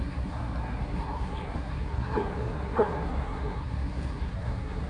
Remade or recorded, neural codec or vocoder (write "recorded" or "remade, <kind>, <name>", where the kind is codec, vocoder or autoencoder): remade, codec, SNAC